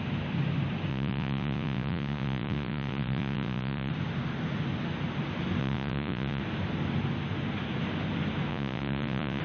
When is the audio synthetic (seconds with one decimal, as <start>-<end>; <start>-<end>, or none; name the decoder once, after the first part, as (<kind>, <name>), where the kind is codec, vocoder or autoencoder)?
0.9-3.9 (vocoder, Vocos); 5.6-6.4; 8.5-9.4